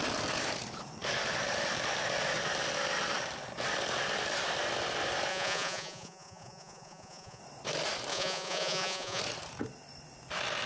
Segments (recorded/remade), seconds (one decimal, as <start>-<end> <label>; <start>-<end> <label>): 0.0-5.3 recorded; 5.3-7.4 remade; 7.4-8.1 recorded; 8.1-9.2 remade; 9.2-10.7 recorded